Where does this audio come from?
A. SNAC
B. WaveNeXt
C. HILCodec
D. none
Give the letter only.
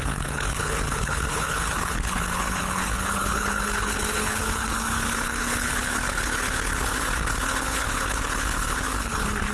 C